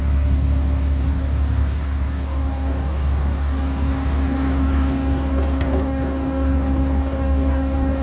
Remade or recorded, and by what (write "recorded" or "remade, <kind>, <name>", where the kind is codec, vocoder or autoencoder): remade, codec, DAC